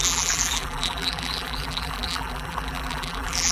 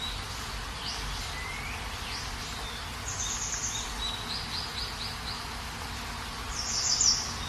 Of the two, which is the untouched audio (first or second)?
second